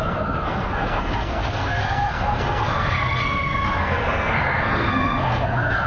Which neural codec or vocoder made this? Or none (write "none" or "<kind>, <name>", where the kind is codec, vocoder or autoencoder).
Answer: codec, SNAC